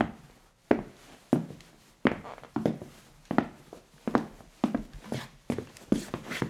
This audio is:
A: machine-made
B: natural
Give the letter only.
B